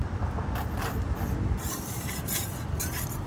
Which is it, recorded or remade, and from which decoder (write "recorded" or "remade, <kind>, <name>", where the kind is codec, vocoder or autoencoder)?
remade, vocoder, BigVGAN v2